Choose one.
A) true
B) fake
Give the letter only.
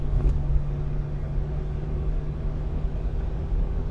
B